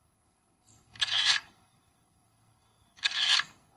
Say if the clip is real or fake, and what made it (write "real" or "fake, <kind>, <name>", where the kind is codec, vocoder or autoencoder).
fake, codec, SNAC